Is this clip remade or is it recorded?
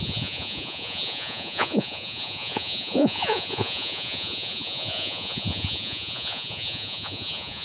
remade